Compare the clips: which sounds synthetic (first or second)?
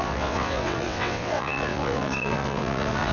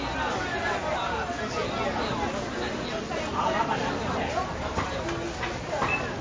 first